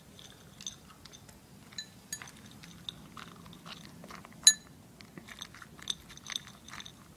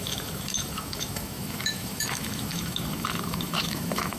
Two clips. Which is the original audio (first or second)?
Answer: first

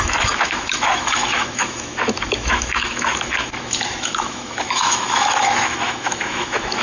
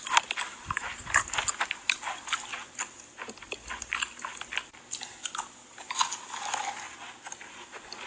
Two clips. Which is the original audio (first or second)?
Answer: second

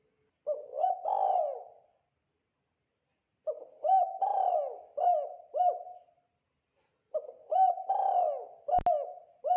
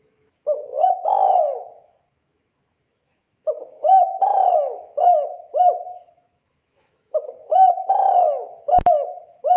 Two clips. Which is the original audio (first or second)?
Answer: first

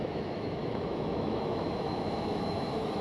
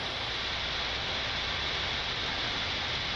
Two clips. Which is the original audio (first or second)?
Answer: second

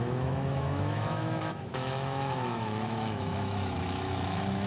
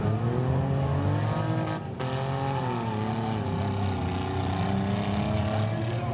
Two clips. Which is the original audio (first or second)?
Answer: second